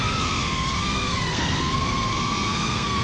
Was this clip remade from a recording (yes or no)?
yes